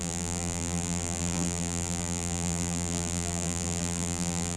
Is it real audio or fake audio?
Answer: fake